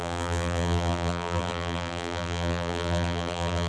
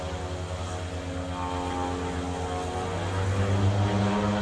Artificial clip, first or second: first